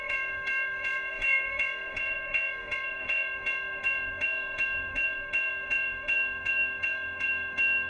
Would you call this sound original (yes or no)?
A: no